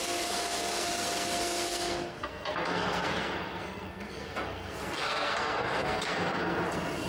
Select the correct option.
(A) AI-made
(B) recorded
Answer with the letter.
A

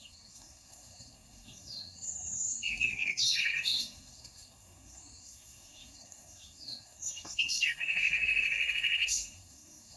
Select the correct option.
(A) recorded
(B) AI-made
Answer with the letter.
B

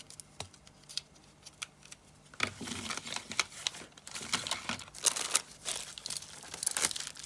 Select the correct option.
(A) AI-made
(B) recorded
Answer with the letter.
B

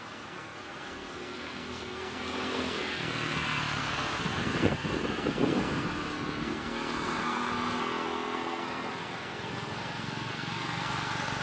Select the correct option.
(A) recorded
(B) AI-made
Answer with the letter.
B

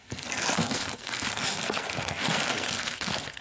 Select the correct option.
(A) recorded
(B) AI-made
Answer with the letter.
B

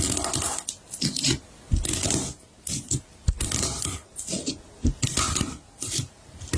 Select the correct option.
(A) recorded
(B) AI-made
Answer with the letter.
A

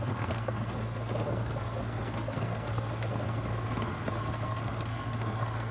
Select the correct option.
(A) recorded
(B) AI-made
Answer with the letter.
B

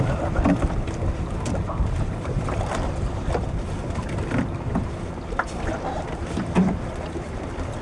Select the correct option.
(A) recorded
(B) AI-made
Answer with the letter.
A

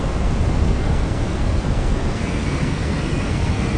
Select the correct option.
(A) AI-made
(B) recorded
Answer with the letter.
A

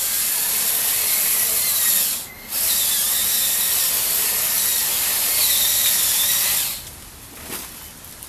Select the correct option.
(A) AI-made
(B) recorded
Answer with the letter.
B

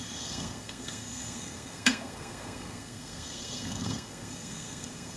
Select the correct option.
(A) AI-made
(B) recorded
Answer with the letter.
A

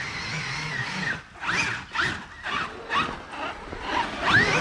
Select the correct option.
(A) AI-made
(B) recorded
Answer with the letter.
B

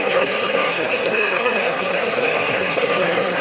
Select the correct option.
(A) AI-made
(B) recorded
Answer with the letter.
A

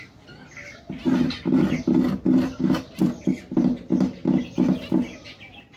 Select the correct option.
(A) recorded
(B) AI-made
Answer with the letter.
A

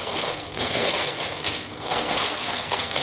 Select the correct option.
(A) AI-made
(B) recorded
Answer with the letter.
A